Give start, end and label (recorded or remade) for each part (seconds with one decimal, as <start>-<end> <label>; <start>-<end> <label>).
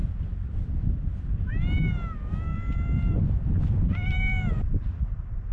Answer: 0.0-1.5 remade; 1.5-2.5 recorded; 2.5-5.5 remade